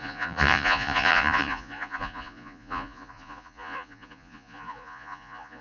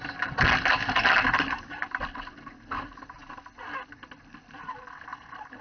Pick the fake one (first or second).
first